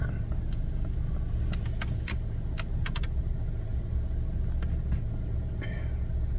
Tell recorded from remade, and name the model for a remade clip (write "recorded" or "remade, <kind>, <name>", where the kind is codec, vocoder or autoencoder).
recorded